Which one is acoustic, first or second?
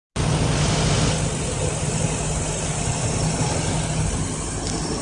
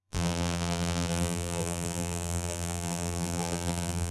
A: first